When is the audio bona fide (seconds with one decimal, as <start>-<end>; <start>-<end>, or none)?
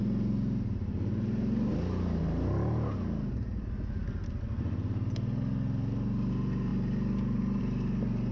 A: 0.0-8.3